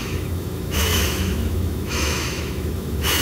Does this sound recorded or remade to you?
remade